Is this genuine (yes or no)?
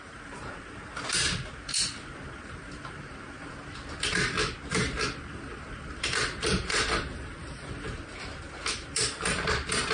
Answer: no